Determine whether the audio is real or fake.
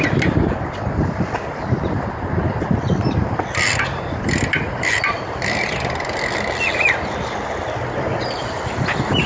real